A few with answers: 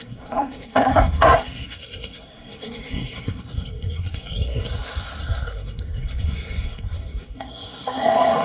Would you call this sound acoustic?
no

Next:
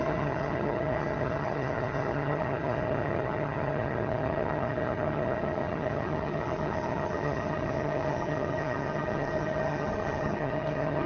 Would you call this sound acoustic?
no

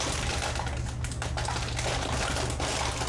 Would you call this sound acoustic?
yes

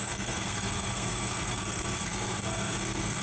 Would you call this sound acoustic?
no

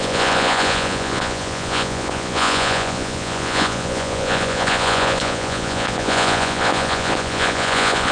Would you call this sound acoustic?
no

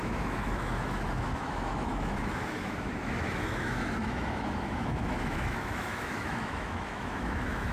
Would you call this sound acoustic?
no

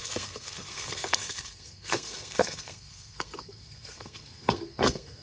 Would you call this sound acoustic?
no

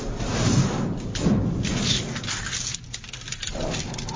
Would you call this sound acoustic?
yes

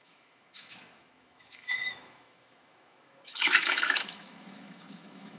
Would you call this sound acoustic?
no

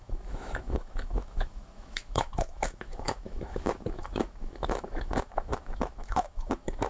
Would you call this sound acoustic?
no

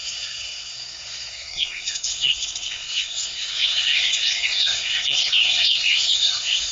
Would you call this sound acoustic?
no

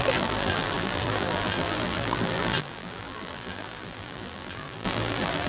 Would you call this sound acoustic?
no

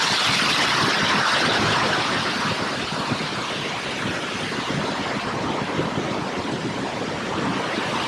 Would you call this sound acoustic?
yes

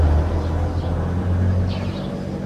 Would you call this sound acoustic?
yes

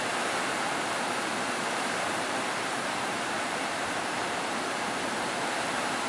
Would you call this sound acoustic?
no